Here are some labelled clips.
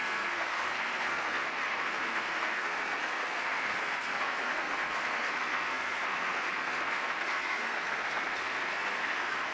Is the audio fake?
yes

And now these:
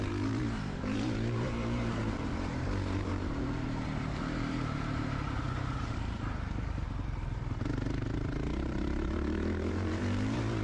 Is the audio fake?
yes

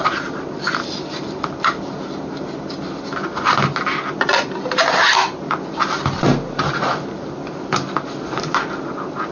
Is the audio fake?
no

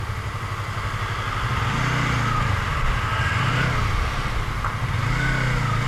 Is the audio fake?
no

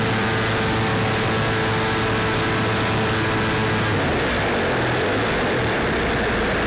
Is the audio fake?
no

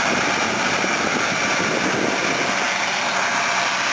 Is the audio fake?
no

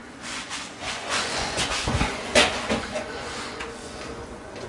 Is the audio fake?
yes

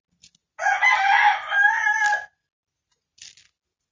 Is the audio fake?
no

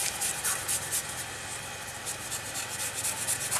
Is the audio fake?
no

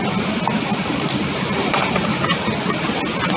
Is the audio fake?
no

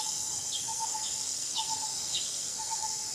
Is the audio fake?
yes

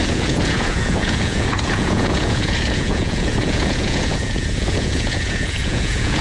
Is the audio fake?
yes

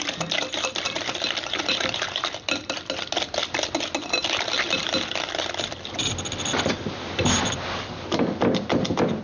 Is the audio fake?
no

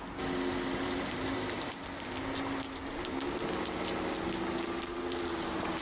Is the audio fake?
no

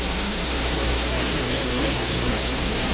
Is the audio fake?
yes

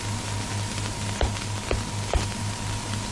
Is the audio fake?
no